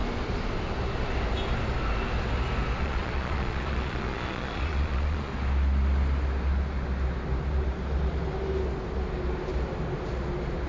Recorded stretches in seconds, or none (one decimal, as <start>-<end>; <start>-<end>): 0.0-2.8; 5.3-10.7